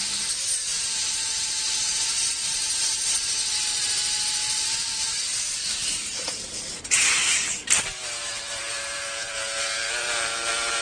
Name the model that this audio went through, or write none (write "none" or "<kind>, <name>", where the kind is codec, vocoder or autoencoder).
vocoder, BigVGAN v2